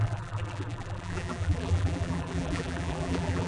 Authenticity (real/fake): fake